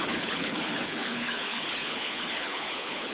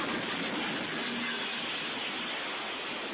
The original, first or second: second